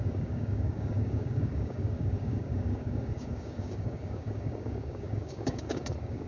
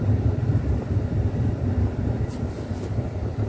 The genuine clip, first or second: second